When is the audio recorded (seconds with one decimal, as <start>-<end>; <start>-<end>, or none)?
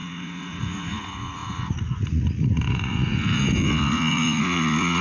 none